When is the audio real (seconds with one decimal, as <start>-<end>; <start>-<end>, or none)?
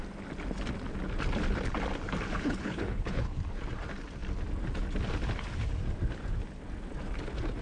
0.0-2.3; 3.4-7.6